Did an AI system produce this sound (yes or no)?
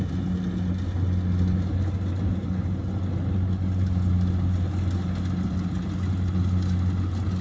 no